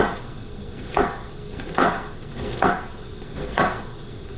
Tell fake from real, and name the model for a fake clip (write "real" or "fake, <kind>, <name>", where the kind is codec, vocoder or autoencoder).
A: fake, codec, SNAC